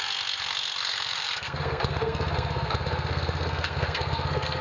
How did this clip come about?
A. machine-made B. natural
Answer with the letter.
A